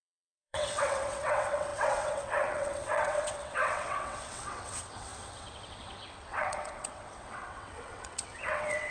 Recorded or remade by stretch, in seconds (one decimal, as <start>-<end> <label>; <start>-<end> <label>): 0.0-8.9 remade